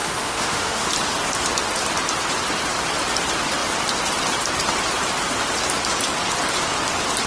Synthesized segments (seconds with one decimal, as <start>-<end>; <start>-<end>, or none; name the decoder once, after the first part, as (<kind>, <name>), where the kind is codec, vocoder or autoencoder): 0.0-0.9 (autoencoder, DAC-VAE)